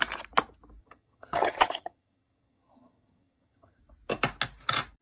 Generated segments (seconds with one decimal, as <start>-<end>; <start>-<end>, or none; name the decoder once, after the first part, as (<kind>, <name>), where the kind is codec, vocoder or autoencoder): 0.8-3.8 (vocoder, HiFi-GAN)